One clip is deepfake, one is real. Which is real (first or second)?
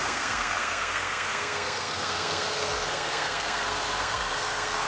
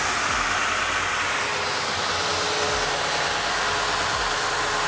second